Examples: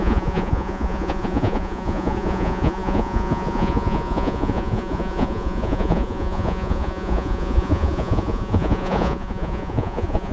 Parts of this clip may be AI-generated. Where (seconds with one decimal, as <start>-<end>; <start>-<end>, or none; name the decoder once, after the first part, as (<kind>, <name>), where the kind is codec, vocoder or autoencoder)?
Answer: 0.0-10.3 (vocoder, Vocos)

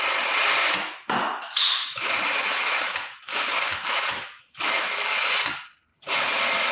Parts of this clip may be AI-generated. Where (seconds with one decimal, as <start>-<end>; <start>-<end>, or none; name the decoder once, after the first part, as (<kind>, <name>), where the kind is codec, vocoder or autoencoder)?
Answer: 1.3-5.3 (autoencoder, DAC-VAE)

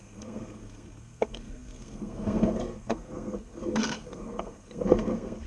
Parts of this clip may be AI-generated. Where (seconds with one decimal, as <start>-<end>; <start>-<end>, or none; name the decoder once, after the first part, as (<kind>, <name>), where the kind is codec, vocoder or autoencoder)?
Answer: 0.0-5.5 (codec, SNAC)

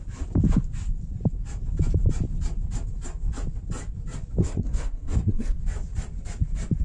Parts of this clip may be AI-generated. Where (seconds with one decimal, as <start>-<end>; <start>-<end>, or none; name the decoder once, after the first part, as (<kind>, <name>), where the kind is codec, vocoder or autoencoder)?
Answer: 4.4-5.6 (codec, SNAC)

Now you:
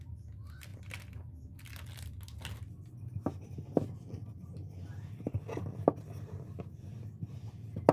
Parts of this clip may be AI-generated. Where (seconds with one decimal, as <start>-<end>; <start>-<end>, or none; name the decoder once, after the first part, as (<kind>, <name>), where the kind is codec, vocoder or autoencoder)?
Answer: none

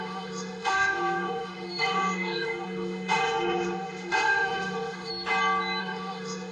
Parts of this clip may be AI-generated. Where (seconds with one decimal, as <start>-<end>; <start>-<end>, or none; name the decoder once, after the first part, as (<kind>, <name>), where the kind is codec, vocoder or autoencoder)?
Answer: 0.0-5.1 (autoencoder, DAC-VAE); 5.8-6.5

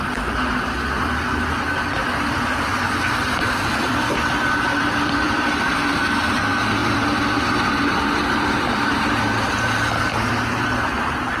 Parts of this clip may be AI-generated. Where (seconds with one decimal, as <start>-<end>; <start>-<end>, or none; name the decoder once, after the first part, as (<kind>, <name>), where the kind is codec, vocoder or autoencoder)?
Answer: 2.0-6.3 (vocoder, BigVGAN v2); 6.8-11.0

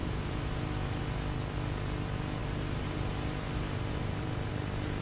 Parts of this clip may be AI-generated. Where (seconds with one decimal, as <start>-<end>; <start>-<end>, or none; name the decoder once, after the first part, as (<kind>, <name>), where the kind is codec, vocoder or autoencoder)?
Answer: 0.0-1.0 (vocoder, BigVGAN v2); 2.4-4.5